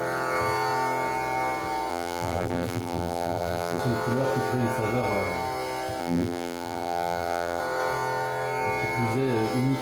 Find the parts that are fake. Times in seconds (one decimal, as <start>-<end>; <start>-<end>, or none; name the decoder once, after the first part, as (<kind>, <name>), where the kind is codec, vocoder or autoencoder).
1.9-3.8 (vocoder, BigVGAN v2); 6.0-7.6